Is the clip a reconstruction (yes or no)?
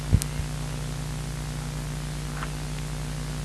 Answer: no